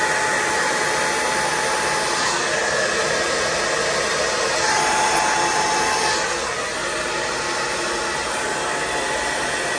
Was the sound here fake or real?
real